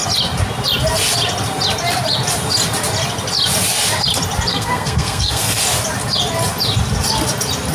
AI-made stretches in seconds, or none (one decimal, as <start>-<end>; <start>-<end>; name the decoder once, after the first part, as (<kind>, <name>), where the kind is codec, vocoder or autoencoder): 4.5-5.6 (codec, SNAC)